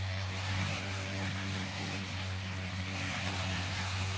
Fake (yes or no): yes